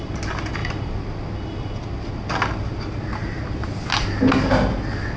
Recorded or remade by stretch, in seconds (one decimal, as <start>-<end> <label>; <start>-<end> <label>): 0.0-3.2 recorded; 3.2-3.7 remade; 3.7-5.2 recorded